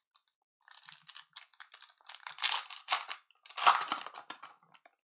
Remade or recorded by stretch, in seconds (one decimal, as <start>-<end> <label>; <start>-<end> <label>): 0.0-0.5 remade; 0.5-3.6 recorded; 3.6-5.1 remade